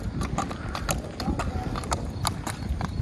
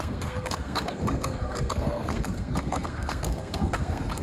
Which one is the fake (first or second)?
second